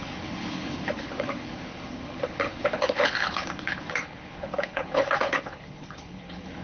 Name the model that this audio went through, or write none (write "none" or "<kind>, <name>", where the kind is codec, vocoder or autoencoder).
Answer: codec, HILCodec